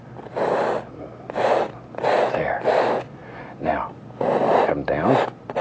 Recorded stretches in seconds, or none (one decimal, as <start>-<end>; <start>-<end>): 0.0-5.6